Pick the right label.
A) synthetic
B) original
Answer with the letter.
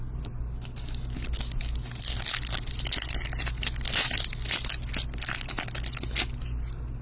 B